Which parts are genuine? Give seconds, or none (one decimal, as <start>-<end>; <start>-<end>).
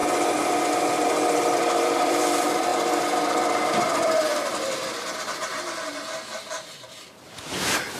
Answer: 0.0-1.6